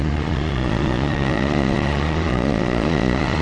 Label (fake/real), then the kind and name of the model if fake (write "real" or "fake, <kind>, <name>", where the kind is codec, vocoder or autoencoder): fake, vocoder, Vocos